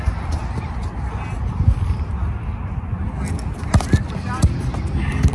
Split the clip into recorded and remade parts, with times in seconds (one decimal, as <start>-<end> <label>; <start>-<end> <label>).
0.0-5.3 recorded